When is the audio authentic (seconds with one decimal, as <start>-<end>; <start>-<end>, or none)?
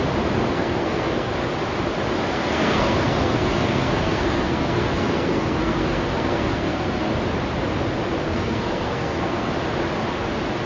0.0-0.5; 1.3-2.3; 7.1-8.2; 9.5-10.7